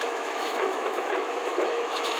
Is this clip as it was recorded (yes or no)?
no